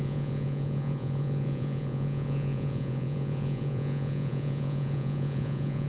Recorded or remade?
remade